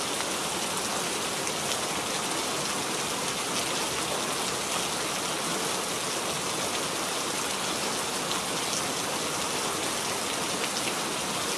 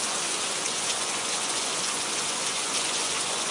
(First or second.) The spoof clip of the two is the second